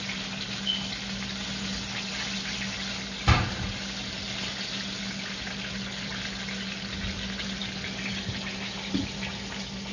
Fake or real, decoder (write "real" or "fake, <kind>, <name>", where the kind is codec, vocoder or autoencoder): real